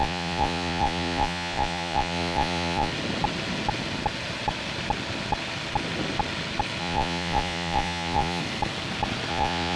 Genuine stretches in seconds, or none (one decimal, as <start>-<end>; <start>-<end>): 2.9-6.8; 8.4-9.3